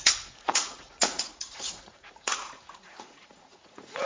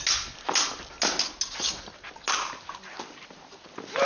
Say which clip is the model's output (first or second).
first